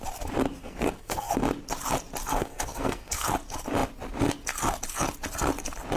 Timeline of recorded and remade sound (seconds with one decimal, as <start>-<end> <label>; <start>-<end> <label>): 0.0-0.6 recorded; 0.6-1.3 remade; 1.3-2.3 recorded; 2.3-3.3 remade; 3.3-6.0 recorded